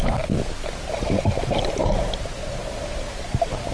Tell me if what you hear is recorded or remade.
recorded